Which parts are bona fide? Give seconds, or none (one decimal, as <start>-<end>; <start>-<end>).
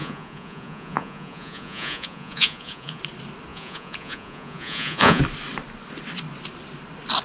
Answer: 3.0-3.5; 5.2-7.2